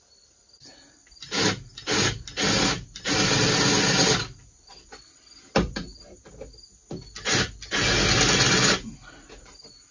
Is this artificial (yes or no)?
no